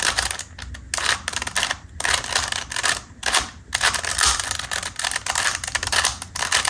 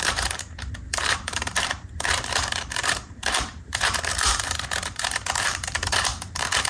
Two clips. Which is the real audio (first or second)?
first